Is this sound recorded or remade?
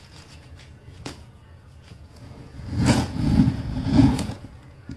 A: remade